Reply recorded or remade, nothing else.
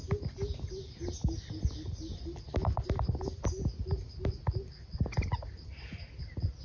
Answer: recorded